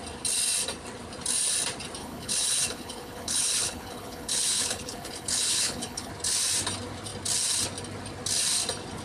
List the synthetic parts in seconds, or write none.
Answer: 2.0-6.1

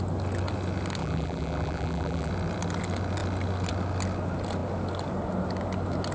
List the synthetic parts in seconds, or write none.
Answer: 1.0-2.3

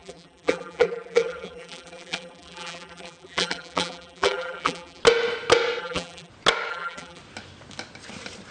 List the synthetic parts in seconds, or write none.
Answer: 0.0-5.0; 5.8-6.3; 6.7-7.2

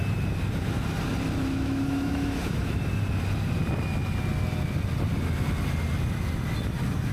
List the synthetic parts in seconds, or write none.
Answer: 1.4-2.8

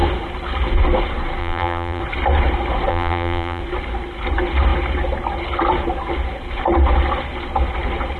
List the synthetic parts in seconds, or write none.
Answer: 1.4-2.0; 2.9-3.6

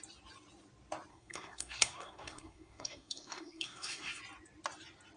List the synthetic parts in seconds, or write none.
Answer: 1.1-4.2

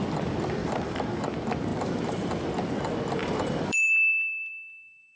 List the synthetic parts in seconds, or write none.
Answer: 0.6-1.2; 1.7-2.3; 3.2-4.5